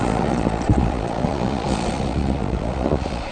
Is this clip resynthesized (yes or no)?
yes